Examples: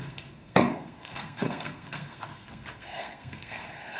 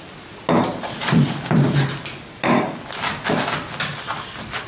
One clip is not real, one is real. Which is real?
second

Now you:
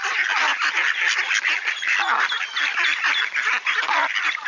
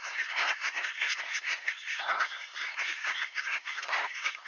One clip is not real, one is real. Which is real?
first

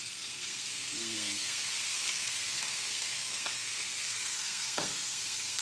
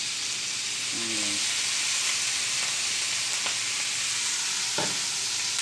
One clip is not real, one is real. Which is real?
second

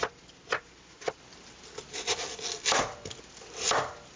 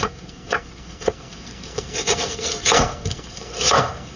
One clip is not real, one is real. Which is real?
first